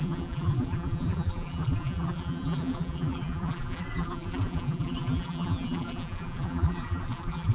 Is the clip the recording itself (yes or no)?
no